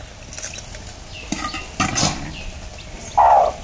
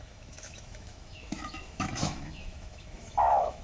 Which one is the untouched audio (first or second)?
first